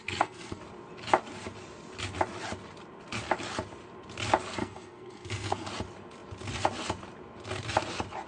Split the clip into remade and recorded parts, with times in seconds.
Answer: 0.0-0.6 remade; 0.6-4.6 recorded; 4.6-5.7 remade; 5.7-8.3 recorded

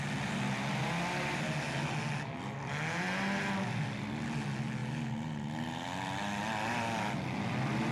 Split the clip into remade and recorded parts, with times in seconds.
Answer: 0.0-7.9 recorded

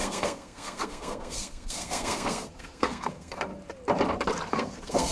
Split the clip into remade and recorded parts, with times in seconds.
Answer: 0.0-3.5 remade; 3.5-4.5 recorded; 4.5-5.1 remade

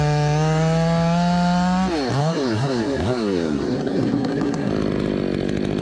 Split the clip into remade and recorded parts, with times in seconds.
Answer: 0.0-2.2 recorded; 2.2-4.7 remade; 4.7-5.8 recorded

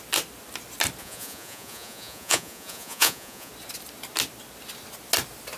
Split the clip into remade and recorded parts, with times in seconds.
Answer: 0.0-1.0 recorded; 1.0-3.5 remade; 3.5-5.6 recorded

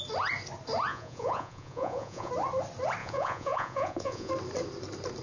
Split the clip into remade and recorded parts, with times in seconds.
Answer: 0.0-0.9 recorded; 0.9-2.3 remade; 2.3-3.0 recorded; 3.0-4.3 remade; 4.3-5.2 recorded

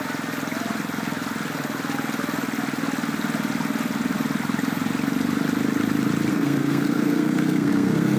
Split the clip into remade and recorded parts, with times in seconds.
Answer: 0.0-6.3 recorded; 6.3-8.2 remade

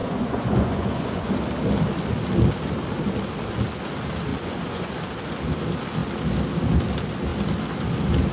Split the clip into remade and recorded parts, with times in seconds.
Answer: 0.0-1.3 remade; 1.3-4.3 recorded; 4.3-4.9 remade; 4.9-8.3 recorded